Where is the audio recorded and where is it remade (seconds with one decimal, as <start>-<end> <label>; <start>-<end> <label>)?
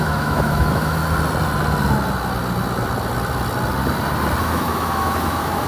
0.0-1.0 remade; 1.0-4.4 recorded; 4.4-5.7 remade